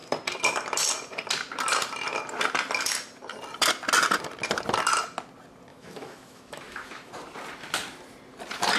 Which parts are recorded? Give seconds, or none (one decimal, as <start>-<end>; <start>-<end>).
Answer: 0.0-5.7; 7.1-8.8